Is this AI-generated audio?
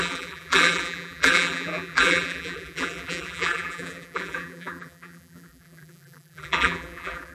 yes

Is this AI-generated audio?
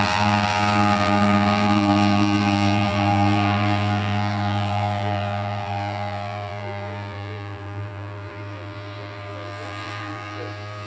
yes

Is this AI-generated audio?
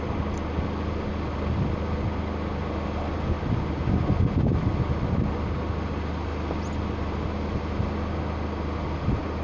no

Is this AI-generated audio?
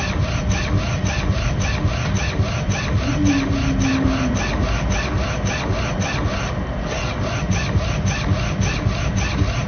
no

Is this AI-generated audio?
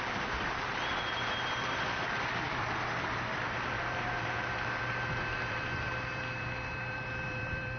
yes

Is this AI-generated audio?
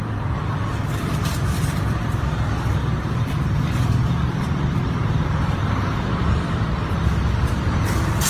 yes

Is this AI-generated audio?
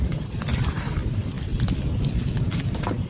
no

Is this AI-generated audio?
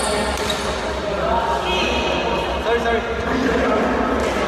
no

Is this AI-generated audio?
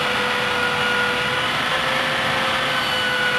no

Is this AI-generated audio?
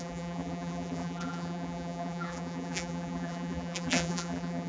yes